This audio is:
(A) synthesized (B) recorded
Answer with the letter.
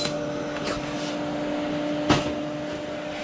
B